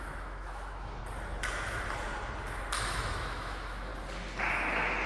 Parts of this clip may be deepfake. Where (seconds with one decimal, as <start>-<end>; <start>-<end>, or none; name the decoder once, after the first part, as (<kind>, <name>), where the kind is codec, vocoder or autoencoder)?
0.0-1.0 (autoencoder, DAC-VAE); 2.8-3.9